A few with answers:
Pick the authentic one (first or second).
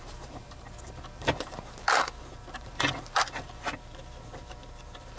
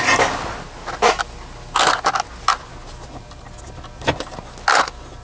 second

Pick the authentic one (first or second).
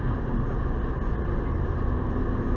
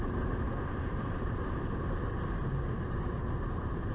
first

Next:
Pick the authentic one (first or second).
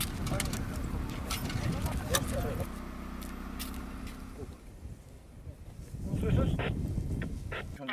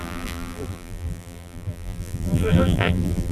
first